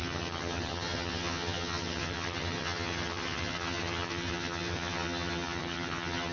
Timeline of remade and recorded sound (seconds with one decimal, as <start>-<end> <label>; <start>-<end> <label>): 0.0-6.3 remade

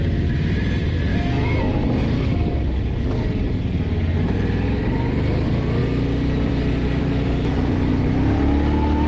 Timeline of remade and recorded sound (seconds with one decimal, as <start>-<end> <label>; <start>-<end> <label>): 0.0-1.1 recorded; 1.1-1.6 remade; 1.6-7.0 recorded; 7.0-7.9 remade; 7.9-9.1 recorded

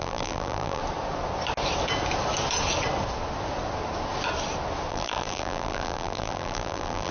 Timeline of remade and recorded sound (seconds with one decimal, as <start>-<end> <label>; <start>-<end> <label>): 0.0-0.8 remade; 0.8-4.9 recorded; 4.9-7.1 remade

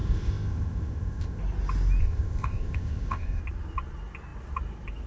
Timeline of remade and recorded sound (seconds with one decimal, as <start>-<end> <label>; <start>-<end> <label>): 0.0-1.4 remade; 1.4-2.0 recorded; 2.0-3.4 remade; 3.4-5.1 recorded

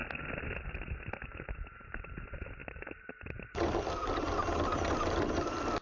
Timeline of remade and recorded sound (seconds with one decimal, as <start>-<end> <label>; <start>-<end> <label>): 0.0-5.8 recorded